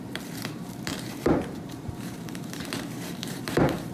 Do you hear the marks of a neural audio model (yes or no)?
yes